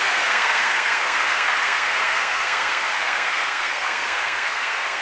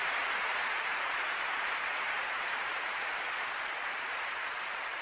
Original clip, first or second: second